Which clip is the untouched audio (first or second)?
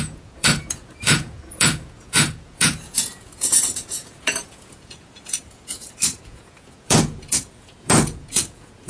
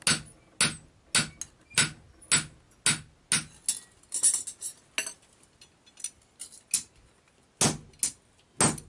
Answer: second